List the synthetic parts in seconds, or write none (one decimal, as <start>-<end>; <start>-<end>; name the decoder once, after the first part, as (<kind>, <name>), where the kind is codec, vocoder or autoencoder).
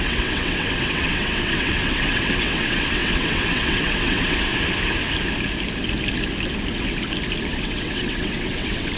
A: 0.0-4.5 (vocoder, WaveNeXt); 7.5-9.0